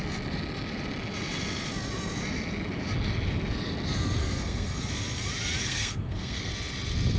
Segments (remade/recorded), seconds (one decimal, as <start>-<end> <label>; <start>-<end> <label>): 0.0-4.2 recorded; 4.2-4.8 remade; 4.8-5.6 recorded; 5.6-6.5 remade; 6.5-7.2 recorded